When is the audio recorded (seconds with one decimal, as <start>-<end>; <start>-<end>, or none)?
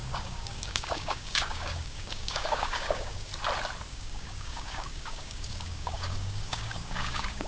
3.3-3.9